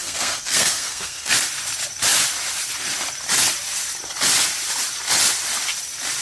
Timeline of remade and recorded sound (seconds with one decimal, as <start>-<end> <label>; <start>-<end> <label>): 0.0-1.3 remade; 1.3-6.2 recorded